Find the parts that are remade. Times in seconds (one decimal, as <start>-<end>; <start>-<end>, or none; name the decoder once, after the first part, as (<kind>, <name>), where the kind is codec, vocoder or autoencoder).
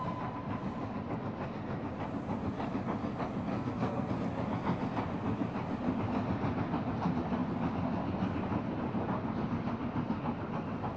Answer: 3.5-4.1 (codec, SNAC)